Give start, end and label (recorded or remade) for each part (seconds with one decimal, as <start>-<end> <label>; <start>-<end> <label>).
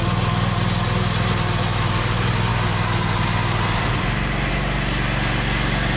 0.0-6.0 recorded